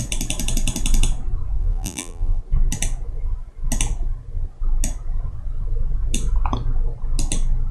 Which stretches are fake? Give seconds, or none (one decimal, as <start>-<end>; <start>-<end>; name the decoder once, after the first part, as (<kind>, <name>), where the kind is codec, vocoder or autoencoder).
1.6-2.4 (vocoder, BigVGAN v2)